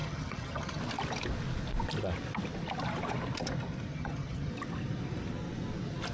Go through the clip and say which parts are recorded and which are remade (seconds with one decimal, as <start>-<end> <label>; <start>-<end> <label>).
0.0-0.8 remade; 0.8-3.9 recorded; 3.9-4.5 remade; 4.5-6.1 recorded